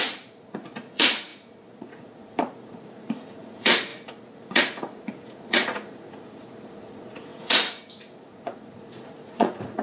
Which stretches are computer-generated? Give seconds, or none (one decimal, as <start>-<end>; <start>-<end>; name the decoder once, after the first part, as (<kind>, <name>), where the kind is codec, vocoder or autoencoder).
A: 0.0-9.8 (vocoder, Vocos)